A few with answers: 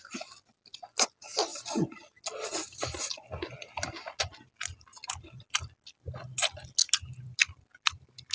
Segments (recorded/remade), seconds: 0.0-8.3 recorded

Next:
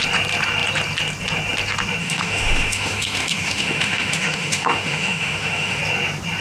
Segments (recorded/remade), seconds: 0.0-2.0 recorded; 2.0-5.8 remade; 5.8-6.4 recorded

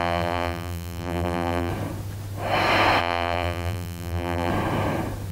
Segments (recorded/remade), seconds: 0.0-1.7 remade; 1.7-3.0 recorded; 3.0-4.5 remade; 4.5-5.3 recorded

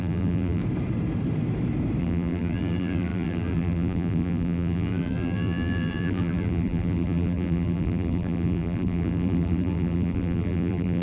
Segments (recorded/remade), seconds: 0.0-0.6 remade; 0.6-2.0 recorded; 2.0-11.0 remade

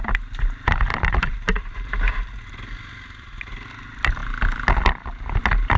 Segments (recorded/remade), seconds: 0.0-0.9 recorded; 0.9-2.3 remade; 2.3-5.8 recorded